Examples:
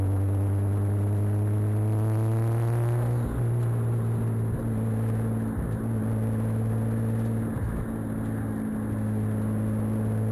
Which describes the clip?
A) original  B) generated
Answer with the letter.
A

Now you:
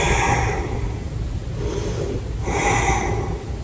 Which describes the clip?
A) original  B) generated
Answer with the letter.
A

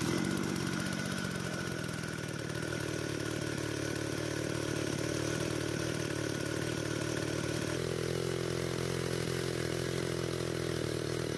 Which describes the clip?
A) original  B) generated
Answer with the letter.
A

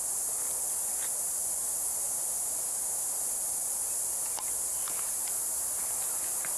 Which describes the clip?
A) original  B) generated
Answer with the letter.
A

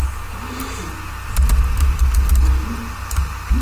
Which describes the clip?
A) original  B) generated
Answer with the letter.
A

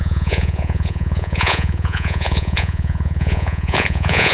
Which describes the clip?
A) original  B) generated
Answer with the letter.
B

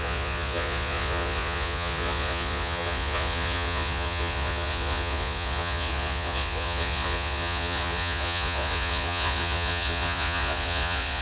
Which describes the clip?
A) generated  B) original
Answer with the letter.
A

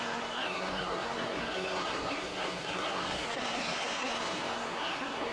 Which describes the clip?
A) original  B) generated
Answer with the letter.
B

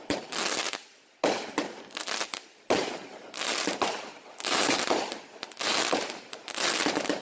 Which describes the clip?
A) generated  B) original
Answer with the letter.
B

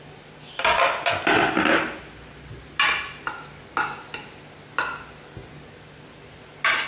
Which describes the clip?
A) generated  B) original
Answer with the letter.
B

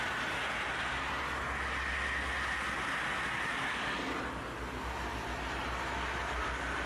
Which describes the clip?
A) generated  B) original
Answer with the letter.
B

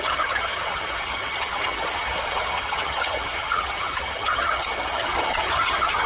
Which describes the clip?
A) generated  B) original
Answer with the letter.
A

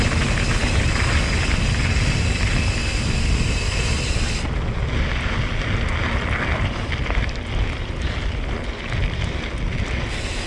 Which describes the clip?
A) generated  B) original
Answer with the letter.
B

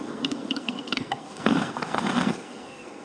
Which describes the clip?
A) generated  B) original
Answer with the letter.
A